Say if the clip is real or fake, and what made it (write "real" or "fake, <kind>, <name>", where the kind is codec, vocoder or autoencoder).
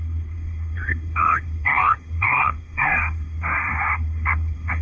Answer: fake, codec, SNAC